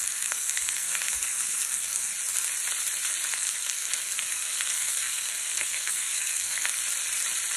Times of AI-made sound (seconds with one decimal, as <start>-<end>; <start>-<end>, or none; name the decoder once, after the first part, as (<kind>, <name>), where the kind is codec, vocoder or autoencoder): 0.0-2.1 (codec, SNAC); 3.3-6.8